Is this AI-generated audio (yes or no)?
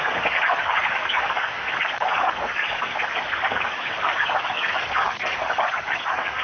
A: yes